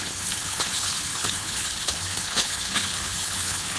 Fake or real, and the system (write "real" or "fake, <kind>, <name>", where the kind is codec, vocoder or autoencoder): fake, codec, HILCodec